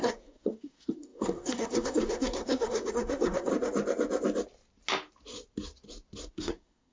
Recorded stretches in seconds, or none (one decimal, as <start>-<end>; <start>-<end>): 3.5-6.3